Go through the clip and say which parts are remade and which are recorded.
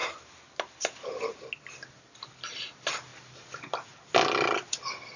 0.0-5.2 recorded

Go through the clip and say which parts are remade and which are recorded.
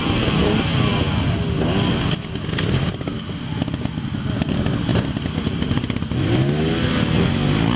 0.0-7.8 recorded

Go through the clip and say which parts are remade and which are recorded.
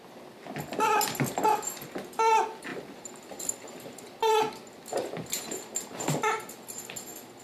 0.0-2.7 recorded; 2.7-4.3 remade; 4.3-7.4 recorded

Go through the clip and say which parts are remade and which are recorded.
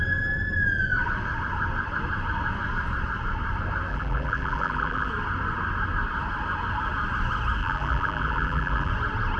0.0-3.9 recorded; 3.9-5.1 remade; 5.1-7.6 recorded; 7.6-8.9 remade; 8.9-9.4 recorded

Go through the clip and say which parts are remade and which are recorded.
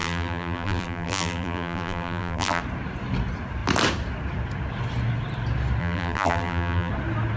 0.0-2.6 remade; 2.6-5.8 recorded; 5.8-6.9 remade; 6.9-7.4 recorded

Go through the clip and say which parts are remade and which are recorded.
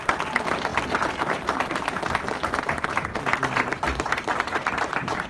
0.0-3.1 recorded; 3.1-5.3 remade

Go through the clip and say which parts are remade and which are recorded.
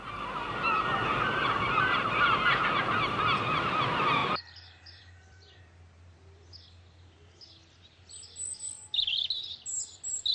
0.0-4.2 recorded; 4.2-5.6 remade; 5.6-10.3 recorded